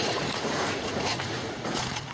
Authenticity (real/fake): fake